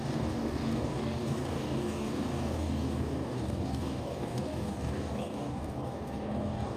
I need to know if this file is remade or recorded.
remade